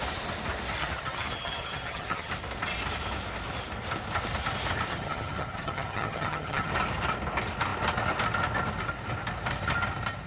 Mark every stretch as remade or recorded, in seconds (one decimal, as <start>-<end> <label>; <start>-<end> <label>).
0.0-0.8 recorded; 0.8-2.3 remade; 2.3-4.9 recorded; 4.9-6.7 remade; 6.7-10.3 recorded